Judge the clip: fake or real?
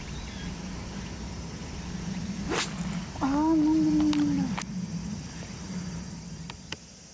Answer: real